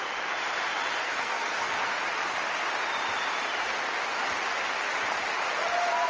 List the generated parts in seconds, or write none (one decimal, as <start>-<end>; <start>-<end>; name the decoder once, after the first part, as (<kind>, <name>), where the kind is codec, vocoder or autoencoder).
1.0-2.0 (codec, SNAC)